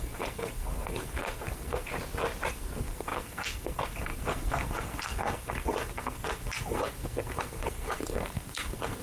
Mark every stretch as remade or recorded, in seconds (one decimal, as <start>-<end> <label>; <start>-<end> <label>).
0.0-1.9 remade; 1.9-2.5 recorded; 2.5-9.0 remade